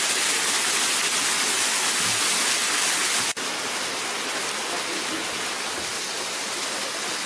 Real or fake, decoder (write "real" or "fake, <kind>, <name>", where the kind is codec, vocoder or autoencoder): real